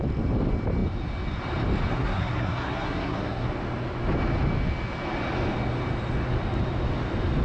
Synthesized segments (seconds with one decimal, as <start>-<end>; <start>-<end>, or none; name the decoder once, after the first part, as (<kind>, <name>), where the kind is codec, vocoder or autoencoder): 1.9-3.5 (codec, SNAC)